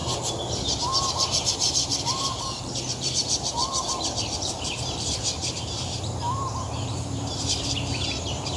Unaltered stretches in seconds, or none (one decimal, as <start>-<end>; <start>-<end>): 0.0-1.1